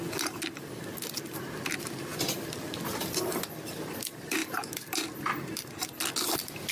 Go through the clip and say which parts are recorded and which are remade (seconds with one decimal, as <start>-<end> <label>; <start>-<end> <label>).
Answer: 0.0-2.1 recorded; 2.1-4.0 remade; 4.0-6.7 recorded